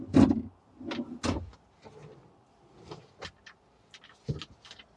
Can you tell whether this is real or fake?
real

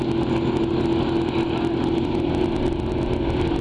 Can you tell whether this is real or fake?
real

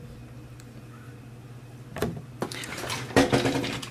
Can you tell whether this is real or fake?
real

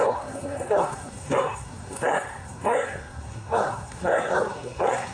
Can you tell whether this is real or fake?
fake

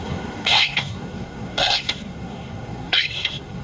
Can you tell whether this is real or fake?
fake